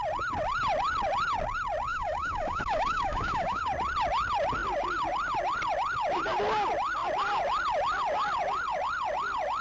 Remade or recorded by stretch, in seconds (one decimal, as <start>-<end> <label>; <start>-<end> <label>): 0.0-1.9 recorded; 1.9-3.6 remade; 3.6-9.6 recorded